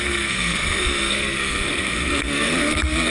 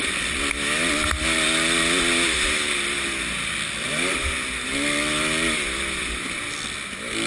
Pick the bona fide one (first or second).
second